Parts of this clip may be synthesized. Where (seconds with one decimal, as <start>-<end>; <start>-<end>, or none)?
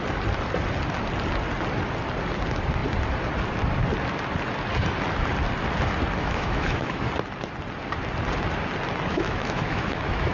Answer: 6.2-7.1; 9.1-10.3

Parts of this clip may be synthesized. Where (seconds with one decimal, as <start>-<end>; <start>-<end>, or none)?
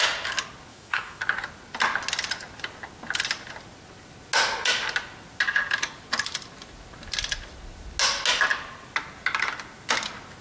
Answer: 0.7-1.2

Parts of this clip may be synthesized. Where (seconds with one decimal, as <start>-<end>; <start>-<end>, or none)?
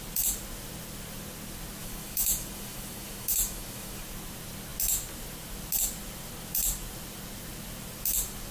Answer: 1.8-4.0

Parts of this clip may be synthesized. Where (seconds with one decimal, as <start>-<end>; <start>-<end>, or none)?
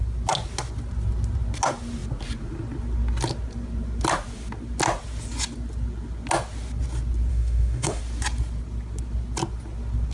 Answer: 7.3-8.0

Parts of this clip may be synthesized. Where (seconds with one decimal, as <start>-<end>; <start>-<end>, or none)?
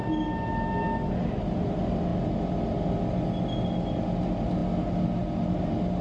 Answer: none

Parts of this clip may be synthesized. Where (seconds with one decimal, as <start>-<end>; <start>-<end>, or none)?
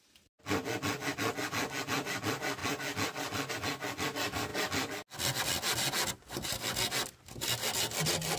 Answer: none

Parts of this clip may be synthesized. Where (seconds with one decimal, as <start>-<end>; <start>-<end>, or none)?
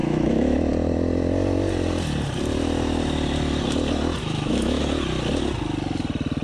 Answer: 0.0-0.7; 4.2-4.8